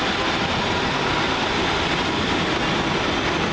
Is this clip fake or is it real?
real